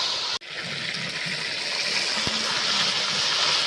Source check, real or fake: real